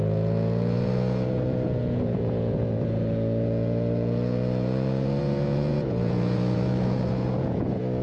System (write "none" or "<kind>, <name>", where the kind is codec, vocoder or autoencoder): vocoder, Vocos